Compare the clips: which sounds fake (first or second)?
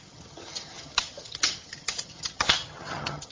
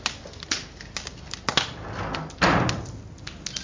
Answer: first